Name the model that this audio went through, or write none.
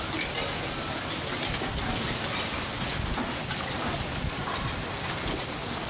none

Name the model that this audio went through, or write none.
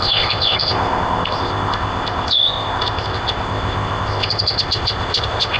codec, ZipCodec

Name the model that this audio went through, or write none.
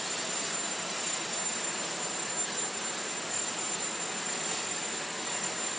none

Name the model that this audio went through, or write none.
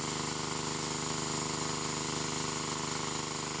none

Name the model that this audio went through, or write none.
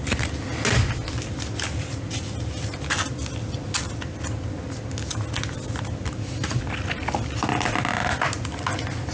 none